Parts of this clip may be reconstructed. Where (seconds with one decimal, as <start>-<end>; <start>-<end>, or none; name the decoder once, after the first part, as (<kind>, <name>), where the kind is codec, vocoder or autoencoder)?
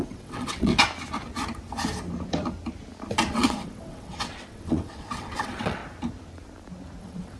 0.0-0.7 (vocoder, WaveNeXt); 3.3-5.8; 7.0-7.4